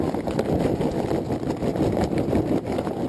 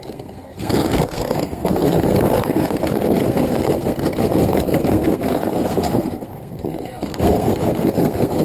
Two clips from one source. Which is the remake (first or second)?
second